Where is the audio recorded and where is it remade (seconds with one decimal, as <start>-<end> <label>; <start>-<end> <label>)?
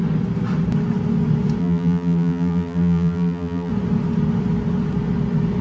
0.0-1.6 recorded; 1.6-3.7 remade; 3.7-5.6 recorded